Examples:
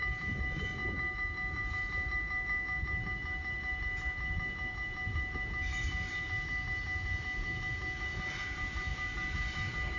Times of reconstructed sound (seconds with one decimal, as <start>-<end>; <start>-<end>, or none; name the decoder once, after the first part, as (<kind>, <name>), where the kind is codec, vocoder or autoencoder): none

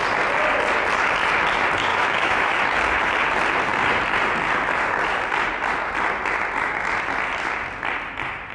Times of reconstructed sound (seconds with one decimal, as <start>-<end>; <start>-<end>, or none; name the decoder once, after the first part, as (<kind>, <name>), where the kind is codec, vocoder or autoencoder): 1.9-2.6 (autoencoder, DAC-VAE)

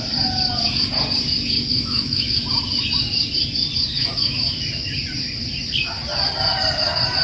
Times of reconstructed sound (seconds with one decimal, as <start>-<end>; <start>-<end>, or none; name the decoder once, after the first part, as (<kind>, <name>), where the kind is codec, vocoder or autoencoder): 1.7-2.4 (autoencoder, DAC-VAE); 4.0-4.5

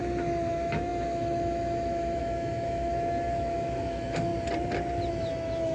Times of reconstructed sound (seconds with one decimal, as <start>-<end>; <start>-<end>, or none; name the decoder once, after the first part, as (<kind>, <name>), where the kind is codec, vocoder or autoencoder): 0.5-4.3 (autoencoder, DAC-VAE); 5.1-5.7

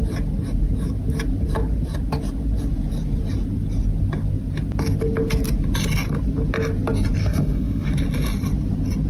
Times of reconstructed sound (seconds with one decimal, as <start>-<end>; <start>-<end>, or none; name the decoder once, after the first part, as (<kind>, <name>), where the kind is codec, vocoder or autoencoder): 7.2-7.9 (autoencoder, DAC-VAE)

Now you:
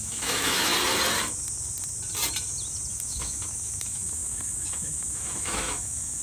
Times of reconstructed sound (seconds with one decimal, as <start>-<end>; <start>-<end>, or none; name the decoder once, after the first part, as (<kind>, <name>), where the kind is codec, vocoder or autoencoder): 0.0-0.7 (autoencoder, DAC-VAE); 2.9-6.2

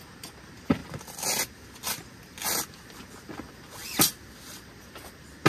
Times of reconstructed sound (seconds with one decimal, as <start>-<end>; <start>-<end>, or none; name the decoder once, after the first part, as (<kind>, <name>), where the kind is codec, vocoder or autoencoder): none

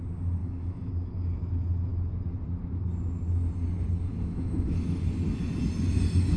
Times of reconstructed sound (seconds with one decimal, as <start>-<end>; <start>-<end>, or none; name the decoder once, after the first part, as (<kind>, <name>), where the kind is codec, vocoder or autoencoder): 0.4-0.9 (autoencoder, DAC-VAE); 4.1-5.0